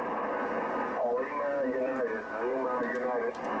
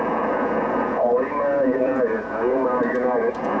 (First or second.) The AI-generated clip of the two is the second